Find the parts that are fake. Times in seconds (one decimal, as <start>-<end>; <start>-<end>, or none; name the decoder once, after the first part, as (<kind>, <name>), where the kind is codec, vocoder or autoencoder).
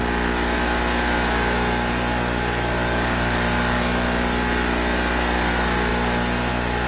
none